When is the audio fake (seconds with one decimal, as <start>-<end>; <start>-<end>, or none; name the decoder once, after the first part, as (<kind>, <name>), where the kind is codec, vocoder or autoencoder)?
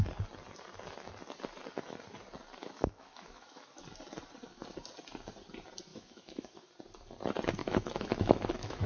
2.6-3.8 (autoencoder, DAC-VAE); 5.9-6.7; 7.6-8.9